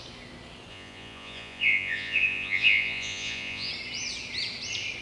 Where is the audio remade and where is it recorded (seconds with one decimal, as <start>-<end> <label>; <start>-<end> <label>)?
0.0-0.7 recorded; 0.7-3.7 remade; 3.7-5.0 recorded

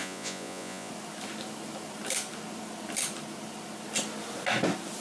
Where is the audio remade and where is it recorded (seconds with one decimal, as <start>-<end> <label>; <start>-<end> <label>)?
0.0-0.9 remade; 0.9-5.0 recorded

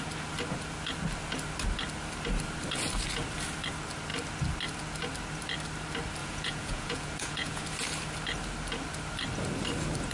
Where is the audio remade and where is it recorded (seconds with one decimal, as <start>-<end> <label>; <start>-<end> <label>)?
0.0-6.2 recorded; 6.2-7.6 remade; 7.6-10.1 recorded

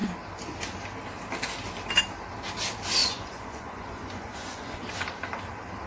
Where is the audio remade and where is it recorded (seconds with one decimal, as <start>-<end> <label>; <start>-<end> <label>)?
0.0-3.0 recorded; 3.0-4.9 remade; 4.9-5.9 recorded